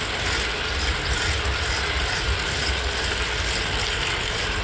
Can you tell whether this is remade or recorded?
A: recorded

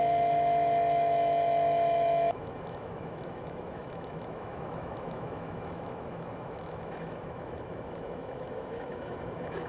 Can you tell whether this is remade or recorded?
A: remade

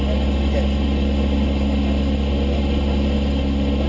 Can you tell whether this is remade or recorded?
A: recorded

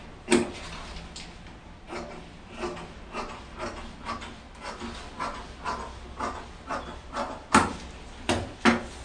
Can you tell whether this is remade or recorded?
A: recorded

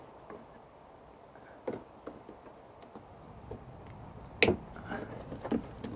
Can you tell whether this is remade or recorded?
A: recorded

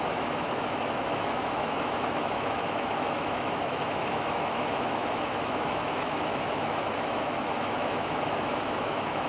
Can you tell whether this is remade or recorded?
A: remade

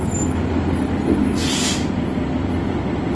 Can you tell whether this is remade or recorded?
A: recorded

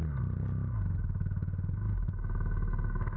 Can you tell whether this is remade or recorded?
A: recorded